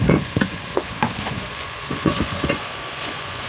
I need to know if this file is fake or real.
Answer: fake